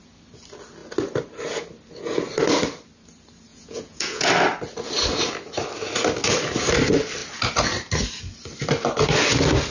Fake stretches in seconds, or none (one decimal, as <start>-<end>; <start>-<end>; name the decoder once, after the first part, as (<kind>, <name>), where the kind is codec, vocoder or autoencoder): 3.5-4.3 (vocoder, Vocos)